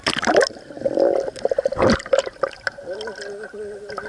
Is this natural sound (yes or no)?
yes